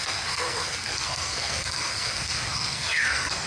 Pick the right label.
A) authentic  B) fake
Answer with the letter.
B